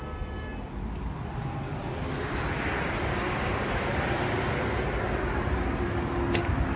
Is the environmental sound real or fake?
real